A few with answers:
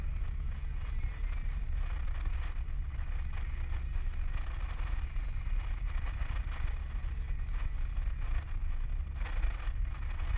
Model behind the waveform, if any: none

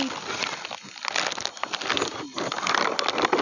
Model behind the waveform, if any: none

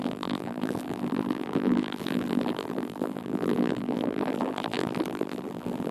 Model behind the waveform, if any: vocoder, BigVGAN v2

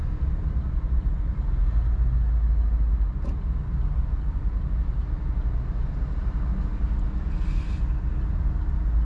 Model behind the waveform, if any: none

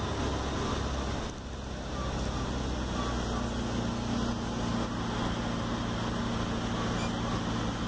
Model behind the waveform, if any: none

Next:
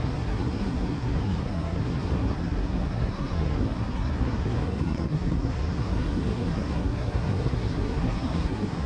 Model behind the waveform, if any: codec, SNAC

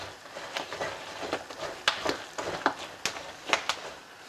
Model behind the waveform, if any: none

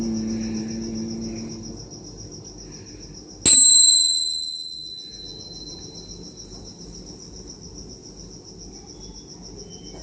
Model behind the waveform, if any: none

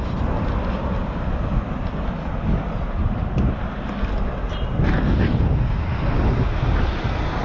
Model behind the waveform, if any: none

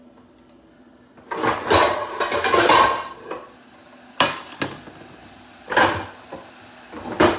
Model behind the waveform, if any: none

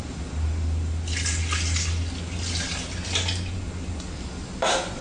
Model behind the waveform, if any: none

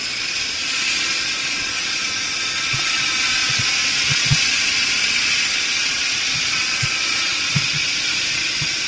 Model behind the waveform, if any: vocoder, Vocos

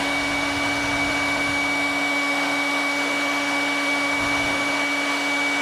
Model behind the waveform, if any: autoencoder, DAC-VAE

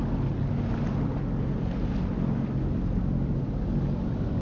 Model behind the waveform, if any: none